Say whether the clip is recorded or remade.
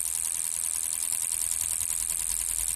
recorded